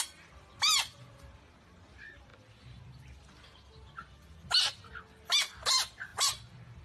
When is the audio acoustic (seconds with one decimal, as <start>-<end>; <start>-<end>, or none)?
0.0-6.8

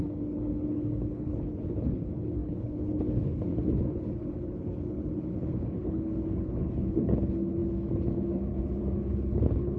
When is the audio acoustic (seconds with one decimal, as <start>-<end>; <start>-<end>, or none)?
none

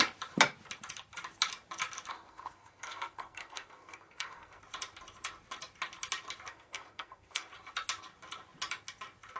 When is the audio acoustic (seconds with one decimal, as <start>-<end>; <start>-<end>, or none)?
0.0-2.1; 4.6-6.5; 7.5-9.4

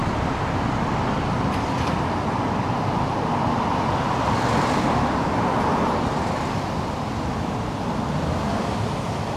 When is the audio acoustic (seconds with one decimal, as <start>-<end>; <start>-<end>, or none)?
0.0-9.4

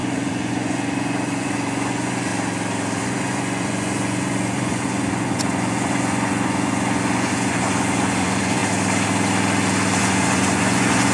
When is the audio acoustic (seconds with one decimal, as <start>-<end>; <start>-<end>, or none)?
2.3-3.0; 8.6-10.0

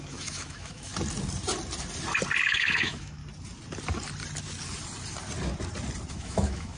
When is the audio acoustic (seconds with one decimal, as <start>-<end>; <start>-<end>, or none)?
0.9-2.4; 3.2-6.1

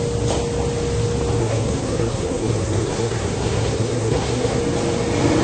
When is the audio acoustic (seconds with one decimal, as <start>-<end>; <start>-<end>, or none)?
0.0-1.4; 4.6-5.4

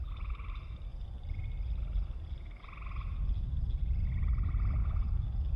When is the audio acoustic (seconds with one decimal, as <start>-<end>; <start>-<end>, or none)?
0.0-5.6